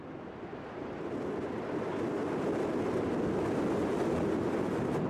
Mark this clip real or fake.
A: real